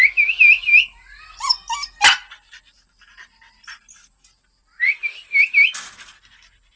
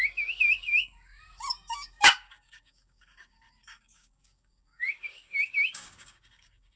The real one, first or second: first